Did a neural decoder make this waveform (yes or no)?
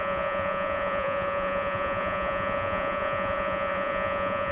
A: yes